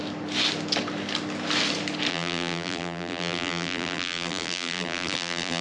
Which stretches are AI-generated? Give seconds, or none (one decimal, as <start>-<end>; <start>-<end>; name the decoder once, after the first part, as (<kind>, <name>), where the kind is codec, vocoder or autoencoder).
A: 2.1-5.6 (vocoder, BigVGAN v2)